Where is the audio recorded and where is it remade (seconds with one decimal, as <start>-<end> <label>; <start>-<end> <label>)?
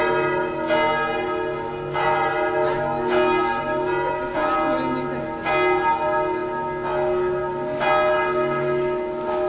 0.0-9.5 recorded